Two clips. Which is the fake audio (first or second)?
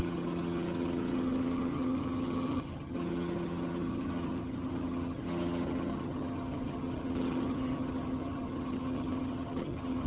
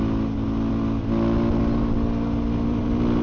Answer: first